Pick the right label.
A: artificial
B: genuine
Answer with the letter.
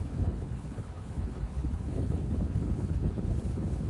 A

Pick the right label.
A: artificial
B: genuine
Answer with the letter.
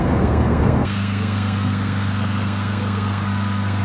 A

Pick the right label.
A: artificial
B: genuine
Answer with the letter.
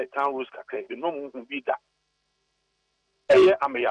B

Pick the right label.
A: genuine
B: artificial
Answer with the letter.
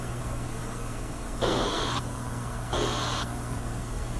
B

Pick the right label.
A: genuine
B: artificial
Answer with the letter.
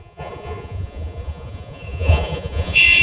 B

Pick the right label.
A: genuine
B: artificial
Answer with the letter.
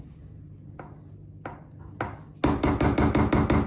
A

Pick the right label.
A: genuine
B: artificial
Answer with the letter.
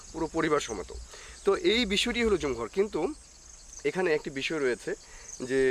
A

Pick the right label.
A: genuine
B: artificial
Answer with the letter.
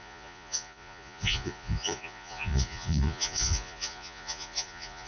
B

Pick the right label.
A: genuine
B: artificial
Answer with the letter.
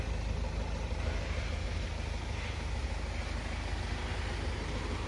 A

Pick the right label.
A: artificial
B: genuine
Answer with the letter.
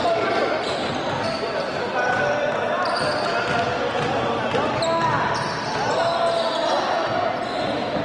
B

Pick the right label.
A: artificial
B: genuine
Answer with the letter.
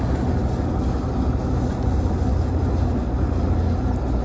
B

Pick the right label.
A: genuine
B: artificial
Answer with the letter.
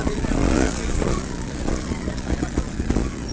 B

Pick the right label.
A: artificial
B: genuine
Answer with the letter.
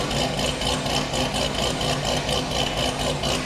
B